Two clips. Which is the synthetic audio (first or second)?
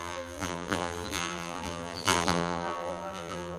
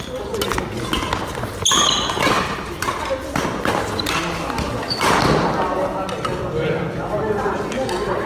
first